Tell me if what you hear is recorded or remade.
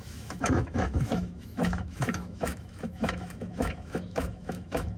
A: remade